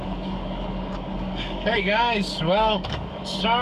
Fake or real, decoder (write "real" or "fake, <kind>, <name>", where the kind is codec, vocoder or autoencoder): fake, codec, DAC